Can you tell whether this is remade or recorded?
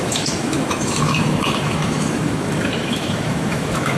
remade